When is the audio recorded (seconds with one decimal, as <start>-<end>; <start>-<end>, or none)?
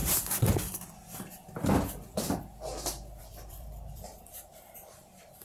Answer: 0.0-3.2